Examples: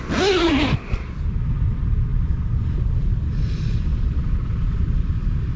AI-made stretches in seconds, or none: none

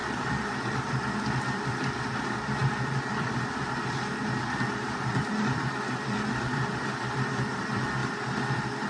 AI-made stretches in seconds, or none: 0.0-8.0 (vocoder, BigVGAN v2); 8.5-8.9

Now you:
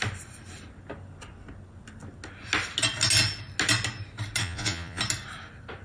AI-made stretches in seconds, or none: 4.4-5.0 (vocoder, Vocos)

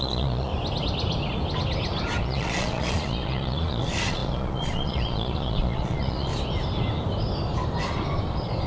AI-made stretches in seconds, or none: 0.0-0.5 (vocoder, Vocos); 2.2-6.3

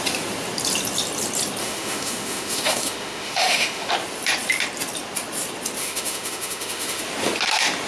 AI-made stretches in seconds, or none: 1.6-3.9 (autoencoder, DAC-VAE); 5.8-7.0